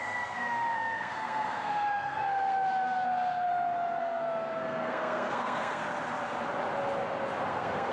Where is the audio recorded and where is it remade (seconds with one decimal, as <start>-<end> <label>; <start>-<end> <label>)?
0.0-3.5 remade; 3.5-4.0 recorded; 4.0-5.8 remade; 5.8-7.5 recorded; 7.5-7.9 remade